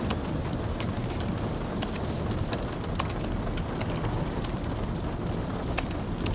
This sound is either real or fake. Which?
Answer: real